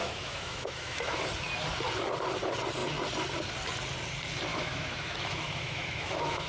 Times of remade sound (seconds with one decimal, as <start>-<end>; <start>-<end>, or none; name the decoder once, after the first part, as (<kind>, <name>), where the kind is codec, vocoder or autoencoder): 0.0-1.2 (autoencoder, DAC-VAE); 4.5-6.5